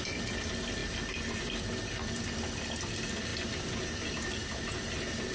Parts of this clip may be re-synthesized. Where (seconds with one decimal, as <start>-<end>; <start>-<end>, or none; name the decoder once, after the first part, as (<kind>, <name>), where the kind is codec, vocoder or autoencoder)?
none